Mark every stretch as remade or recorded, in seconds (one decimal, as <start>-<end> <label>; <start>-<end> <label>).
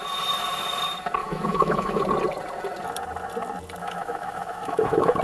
0.0-1.2 recorded; 1.2-2.0 remade; 2.0-3.8 recorded; 3.8-5.2 remade